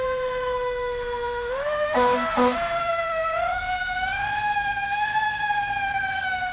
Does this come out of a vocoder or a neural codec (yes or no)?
yes